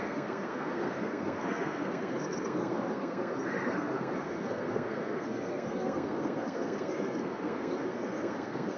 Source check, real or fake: fake